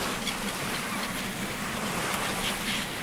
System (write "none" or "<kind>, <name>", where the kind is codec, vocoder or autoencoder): none